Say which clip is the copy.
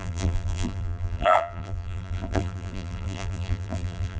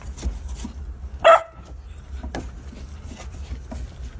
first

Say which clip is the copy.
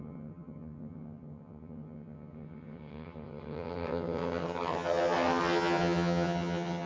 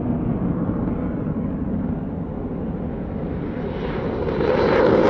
first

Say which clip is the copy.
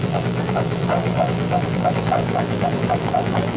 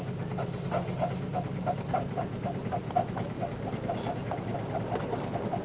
first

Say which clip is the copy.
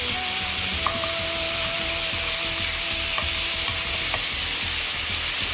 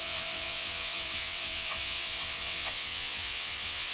second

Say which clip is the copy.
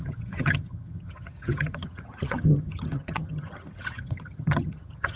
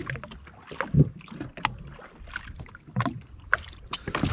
first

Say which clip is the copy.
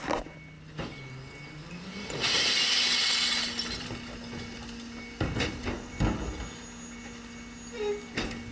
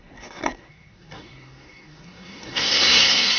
second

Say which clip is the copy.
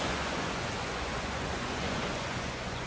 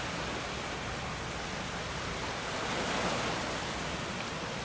first